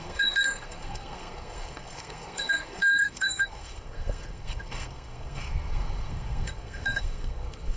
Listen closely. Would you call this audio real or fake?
fake